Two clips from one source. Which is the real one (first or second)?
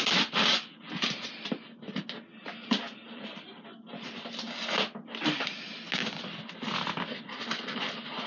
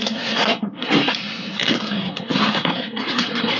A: first